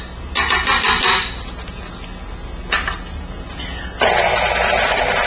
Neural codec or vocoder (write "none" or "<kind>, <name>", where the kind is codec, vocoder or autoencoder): none